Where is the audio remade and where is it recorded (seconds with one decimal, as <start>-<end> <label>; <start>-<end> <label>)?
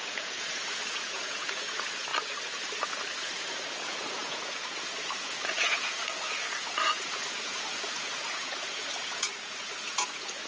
0.0-2.1 remade; 2.1-3.2 recorded; 3.2-10.5 remade